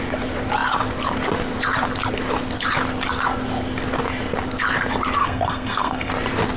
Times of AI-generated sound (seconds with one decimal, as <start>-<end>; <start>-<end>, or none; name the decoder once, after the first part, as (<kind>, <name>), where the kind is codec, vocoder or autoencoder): 5.2-6.1 (codec, SNAC)